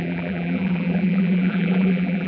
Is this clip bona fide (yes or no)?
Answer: no